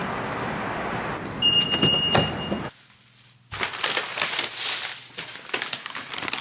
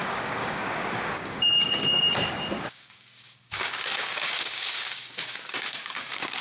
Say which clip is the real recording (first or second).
first